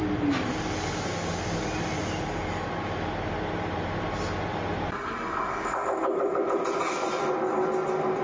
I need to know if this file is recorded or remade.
recorded